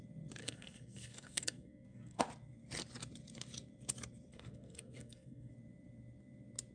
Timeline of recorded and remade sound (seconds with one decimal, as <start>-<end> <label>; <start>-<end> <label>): 0.0-0.4 recorded; 0.4-2.2 remade; 2.2-4.3 recorded; 4.3-5.5 remade; 5.5-6.7 recorded